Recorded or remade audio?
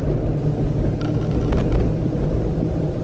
recorded